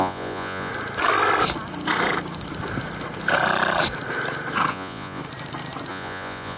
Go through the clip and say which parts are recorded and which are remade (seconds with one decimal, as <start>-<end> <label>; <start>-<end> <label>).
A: 0.0-0.7 remade; 0.7-4.7 recorded; 4.7-5.2 remade; 5.2-5.9 recorded; 5.9-6.6 remade